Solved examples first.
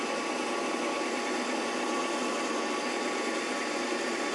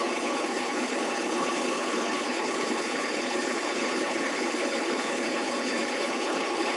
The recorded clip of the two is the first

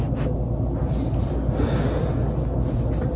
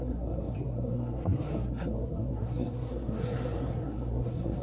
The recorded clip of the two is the first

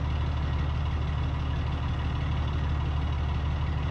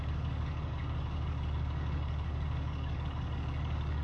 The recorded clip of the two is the first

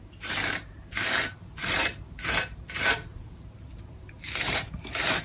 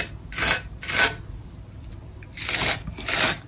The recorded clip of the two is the second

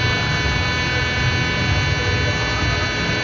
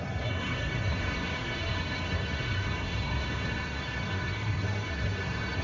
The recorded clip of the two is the first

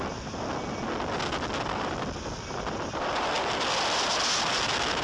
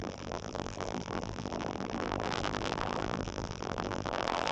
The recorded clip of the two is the first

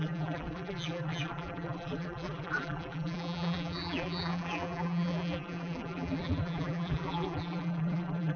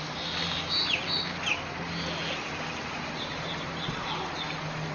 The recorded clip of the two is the second